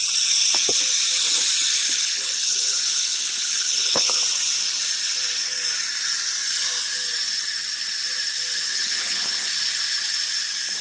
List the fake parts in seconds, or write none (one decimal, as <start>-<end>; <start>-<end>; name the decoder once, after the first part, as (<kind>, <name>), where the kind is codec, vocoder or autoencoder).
1.8-4.2 (codec, HILCodec); 8.7-9.5